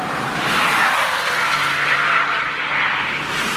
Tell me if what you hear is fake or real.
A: real